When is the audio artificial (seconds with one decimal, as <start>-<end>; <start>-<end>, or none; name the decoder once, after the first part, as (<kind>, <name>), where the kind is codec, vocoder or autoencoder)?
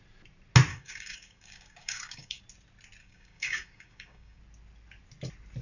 0.7-2.4 (codec, DAC); 3.0-4.4